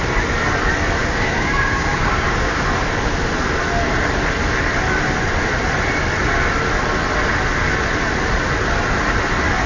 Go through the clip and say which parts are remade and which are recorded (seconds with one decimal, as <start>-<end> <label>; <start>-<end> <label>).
0.0-1.0 recorded; 1.0-2.6 remade; 2.6-9.7 recorded